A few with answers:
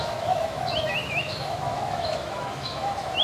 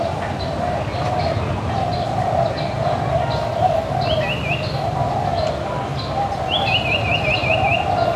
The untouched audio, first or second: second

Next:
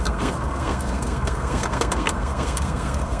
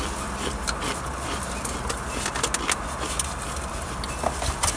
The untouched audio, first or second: second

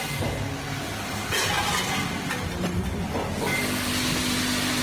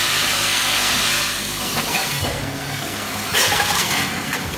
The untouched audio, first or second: first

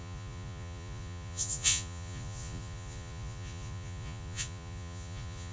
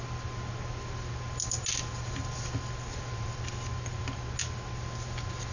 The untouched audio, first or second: second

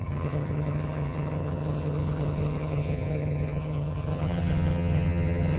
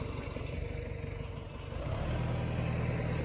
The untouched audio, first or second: second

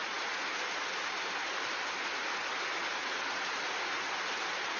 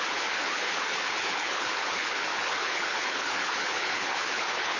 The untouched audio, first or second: first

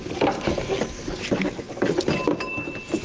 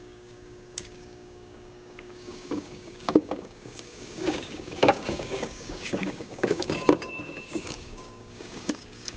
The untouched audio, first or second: first